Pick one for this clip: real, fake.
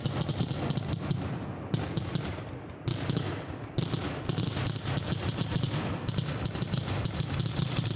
real